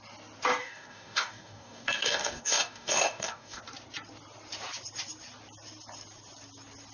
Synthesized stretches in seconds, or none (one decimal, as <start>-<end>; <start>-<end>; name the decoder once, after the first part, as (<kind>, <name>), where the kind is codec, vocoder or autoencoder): 0.6-3.6 (codec, DAC)